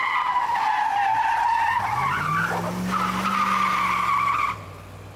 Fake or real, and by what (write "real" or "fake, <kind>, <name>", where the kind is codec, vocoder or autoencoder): real